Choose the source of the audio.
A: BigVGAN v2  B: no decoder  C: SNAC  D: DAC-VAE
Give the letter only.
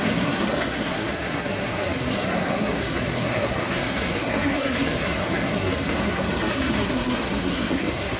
C